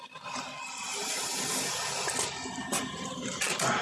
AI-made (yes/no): no